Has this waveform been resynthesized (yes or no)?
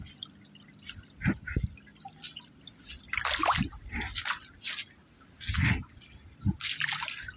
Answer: no